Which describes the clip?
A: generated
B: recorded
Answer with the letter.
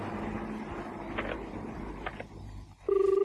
B